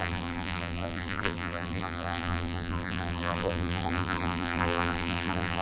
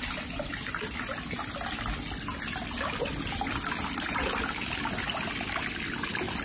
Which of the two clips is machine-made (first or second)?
first